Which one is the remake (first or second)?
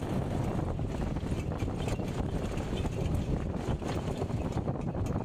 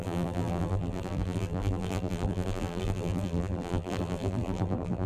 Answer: second